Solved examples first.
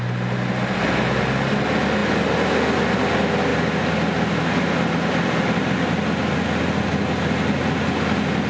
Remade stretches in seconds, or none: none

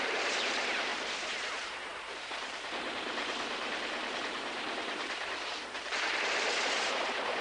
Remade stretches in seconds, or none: 0.0-7.4 (vocoder, BigVGAN v2)

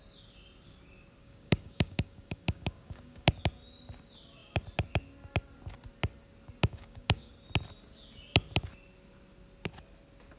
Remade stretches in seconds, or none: 1.2-3.3 (codec, DAC); 6.6-7.3

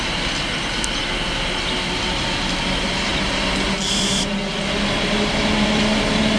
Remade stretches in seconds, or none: none

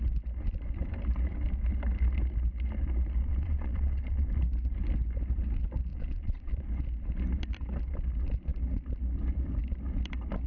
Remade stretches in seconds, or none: 3.3-4.3 (vocoder, Vocos); 5.9-6.5

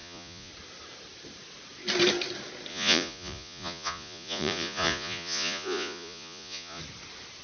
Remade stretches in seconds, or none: 0.0-0.5 (vocoder, Vocos); 2.7-6.8

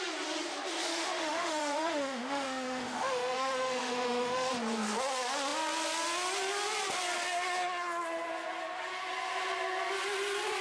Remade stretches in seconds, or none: 0.9-4.5 (autoencoder, DAC-VAE)